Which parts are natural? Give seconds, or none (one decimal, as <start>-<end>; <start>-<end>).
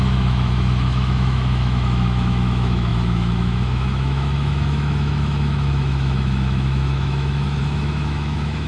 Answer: none